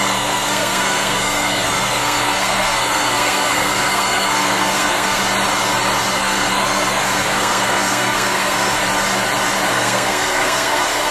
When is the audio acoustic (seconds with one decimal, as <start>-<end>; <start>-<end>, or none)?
5.2-6.1; 8.8-9.7